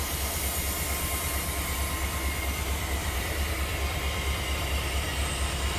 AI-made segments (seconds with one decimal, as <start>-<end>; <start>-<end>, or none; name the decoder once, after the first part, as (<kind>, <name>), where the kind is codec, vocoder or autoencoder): 3.0-3.5 (vocoder, BigVGAN v2)